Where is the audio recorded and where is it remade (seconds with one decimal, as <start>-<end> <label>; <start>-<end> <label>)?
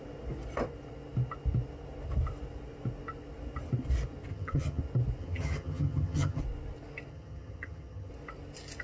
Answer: 0.0-4.3 recorded; 4.3-4.8 remade; 4.8-5.2 recorded; 5.2-6.4 remade; 6.4-7.1 recorded; 7.1-8.1 remade; 8.1-8.8 recorded